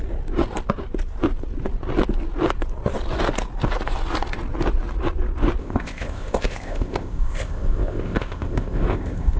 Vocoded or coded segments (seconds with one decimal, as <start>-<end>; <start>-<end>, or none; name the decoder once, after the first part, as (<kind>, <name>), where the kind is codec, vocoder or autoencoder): 5.6-9.4 (codec, ZipCodec)